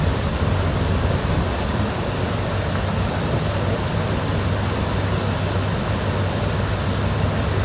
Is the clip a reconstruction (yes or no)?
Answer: no